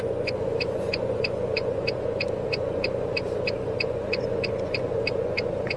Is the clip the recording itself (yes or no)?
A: no